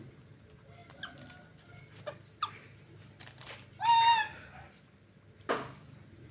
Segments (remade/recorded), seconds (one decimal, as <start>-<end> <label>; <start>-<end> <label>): 0.0-6.3 recorded